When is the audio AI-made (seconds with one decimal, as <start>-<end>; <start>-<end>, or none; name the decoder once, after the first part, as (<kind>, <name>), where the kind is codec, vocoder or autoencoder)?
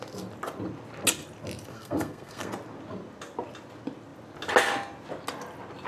1.7-2.5 (codec, SNAC)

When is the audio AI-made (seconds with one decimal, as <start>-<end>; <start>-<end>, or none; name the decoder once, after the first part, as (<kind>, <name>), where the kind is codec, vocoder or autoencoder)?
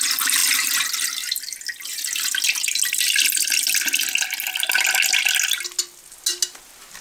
none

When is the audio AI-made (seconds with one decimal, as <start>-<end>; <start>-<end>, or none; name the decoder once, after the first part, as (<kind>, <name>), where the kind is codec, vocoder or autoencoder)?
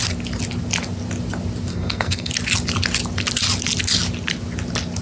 1.7-2.3 (codec, SNAC)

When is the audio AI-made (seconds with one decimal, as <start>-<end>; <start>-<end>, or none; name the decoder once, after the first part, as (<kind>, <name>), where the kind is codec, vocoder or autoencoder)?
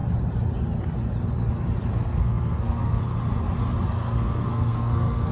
1.9-3.1 (codec, SNAC); 3.9-5.3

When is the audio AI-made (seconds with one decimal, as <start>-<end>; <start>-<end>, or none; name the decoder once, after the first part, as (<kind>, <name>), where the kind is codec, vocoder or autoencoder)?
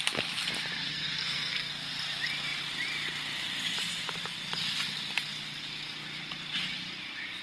0.9-1.7 (codec, SNAC)